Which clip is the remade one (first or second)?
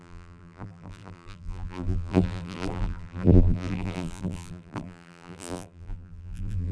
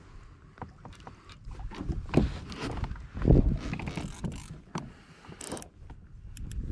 first